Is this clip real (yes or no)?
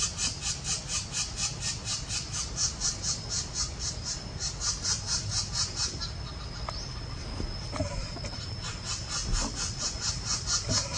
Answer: yes